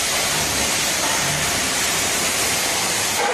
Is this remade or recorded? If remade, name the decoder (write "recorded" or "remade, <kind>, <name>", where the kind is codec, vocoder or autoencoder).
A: remade, vocoder, BigVGAN v2